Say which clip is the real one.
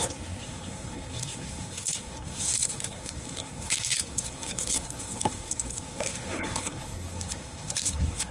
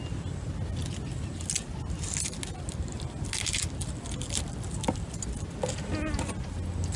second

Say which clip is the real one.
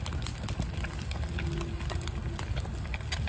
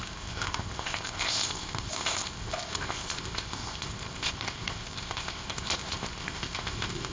first